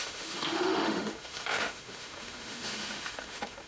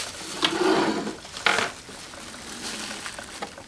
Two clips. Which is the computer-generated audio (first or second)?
first